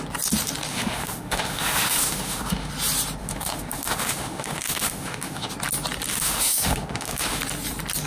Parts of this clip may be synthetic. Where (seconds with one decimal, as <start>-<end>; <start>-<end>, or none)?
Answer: 0.7-2.7; 3.2-5.5; 6.1-7.4